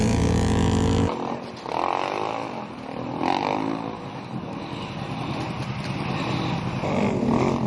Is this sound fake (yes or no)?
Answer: no